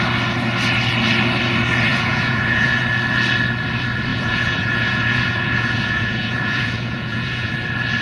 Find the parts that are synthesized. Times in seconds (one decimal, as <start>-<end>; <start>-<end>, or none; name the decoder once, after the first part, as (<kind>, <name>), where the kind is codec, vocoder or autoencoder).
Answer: 1.9-2.8 (vocoder, Vocos); 4.1-7.5